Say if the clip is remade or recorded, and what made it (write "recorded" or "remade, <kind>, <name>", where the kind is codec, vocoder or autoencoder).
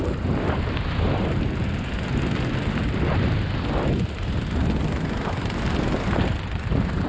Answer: recorded